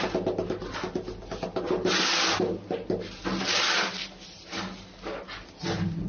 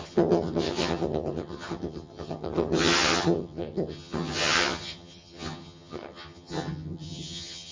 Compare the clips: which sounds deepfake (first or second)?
second